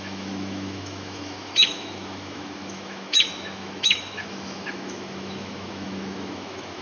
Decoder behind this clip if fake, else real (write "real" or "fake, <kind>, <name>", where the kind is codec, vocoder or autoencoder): fake, autoencoder, DAC-VAE